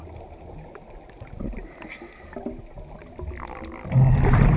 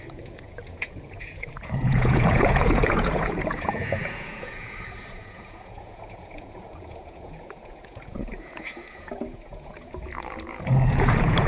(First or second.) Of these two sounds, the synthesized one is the second